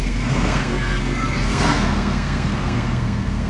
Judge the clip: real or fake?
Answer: fake